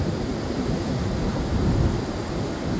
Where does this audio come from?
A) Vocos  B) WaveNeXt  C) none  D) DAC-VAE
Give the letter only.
C